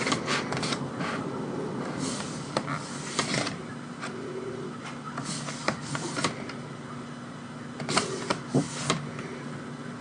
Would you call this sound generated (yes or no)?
no